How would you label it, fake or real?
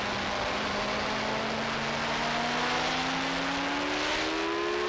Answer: real